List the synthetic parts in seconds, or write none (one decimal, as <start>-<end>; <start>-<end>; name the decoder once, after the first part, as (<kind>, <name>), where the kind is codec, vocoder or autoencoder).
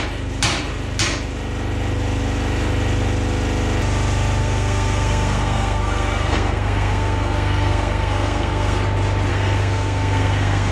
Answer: 4.4-8.8 (codec, SNAC); 9.3-10.7